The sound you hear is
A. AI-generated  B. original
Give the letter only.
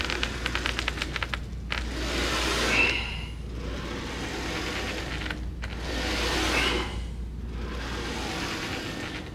B